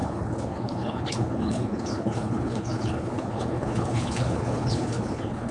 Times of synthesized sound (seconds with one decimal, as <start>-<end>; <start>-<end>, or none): 0.0-5.5